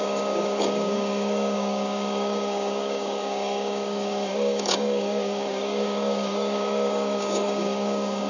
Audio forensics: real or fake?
fake